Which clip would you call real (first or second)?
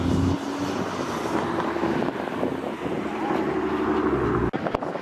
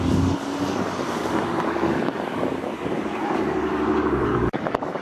first